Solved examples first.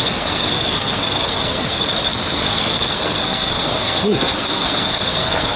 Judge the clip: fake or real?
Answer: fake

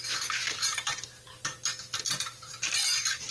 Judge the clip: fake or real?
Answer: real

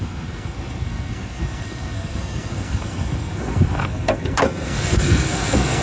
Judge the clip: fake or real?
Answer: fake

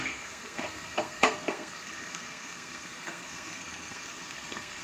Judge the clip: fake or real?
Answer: fake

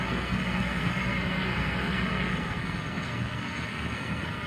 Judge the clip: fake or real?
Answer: fake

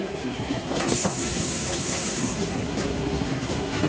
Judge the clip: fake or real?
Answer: fake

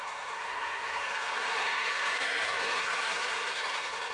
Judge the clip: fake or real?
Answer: fake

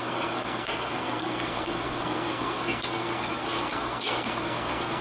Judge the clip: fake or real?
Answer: fake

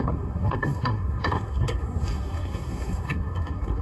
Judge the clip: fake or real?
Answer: fake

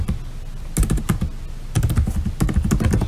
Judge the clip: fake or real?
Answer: real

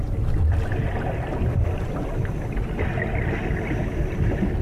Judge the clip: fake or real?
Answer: real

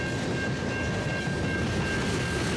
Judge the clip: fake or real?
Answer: real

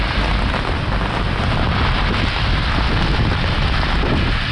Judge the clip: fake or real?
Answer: real